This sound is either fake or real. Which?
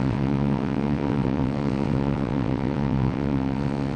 fake